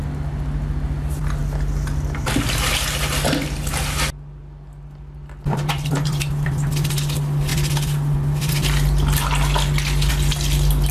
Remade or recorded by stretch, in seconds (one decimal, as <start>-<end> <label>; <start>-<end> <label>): 0.0-10.9 recorded